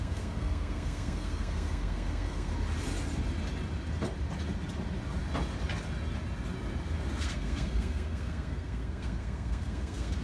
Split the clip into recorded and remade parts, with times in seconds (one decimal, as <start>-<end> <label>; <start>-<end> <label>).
0.0-2.5 remade; 2.5-7.2 recorded; 7.2-10.2 remade